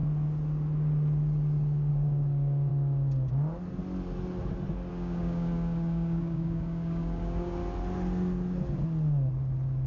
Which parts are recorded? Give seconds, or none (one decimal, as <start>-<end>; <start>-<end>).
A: 0.0-1.9; 2.7-4.9; 7.6-9.9